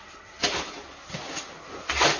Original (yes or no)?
yes